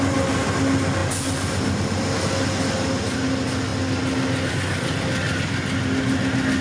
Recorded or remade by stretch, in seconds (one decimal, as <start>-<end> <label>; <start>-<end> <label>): 0.0-6.6 recorded